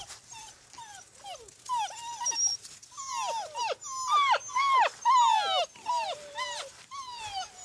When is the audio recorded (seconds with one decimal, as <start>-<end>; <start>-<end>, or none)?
0.0-7.6